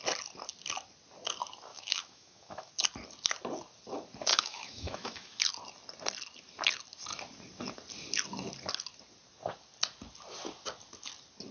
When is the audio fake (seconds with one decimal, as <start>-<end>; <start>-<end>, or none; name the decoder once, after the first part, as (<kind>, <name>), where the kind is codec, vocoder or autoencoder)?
1.7-2.7 (autoencoder, DAC-VAE); 4.3-5.4